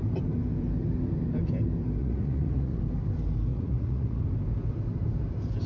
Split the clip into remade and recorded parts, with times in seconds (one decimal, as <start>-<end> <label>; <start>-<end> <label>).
0.0-2.0 recorded; 2.0-2.8 remade; 2.8-3.5 recorded; 3.5-4.2 remade; 4.2-5.7 recorded